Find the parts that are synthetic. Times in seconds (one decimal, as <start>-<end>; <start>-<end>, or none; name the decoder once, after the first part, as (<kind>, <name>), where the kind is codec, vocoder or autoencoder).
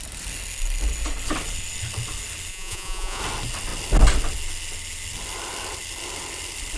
2.5-3.2 (vocoder, Vocos)